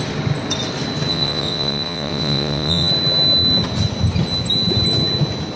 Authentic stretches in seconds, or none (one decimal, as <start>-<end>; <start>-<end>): 0.0-1.1; 2.9-5.6